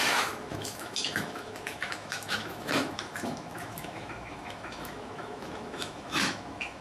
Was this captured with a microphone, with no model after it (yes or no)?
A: no